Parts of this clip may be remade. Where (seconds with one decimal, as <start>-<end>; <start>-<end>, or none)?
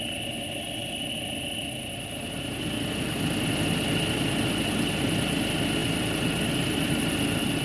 none